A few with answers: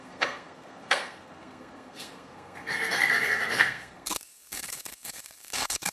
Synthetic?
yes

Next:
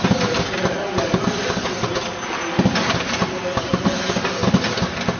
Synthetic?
no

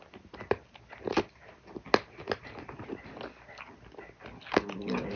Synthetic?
no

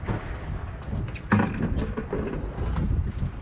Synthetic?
no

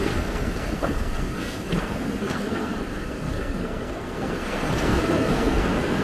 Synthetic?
yes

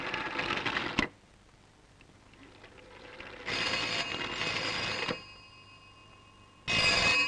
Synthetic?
no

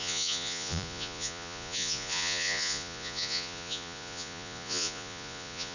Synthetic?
yes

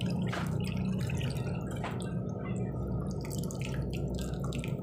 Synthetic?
no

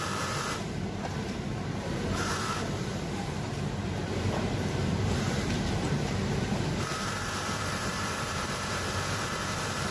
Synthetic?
yes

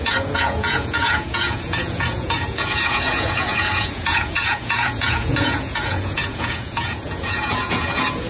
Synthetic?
yes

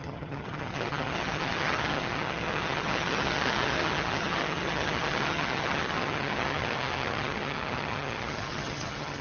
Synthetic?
yes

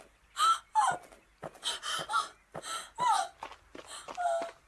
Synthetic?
no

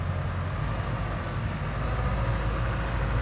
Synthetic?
no